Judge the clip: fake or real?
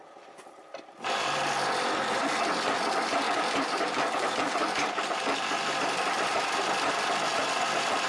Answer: fake